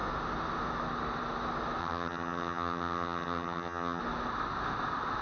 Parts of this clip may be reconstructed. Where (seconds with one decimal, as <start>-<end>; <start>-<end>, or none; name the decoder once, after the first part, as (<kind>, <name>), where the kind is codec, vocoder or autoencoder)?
1.8-4.0 (vocoder, HiFi-GAN)